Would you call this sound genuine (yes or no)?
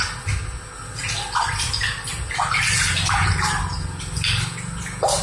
yes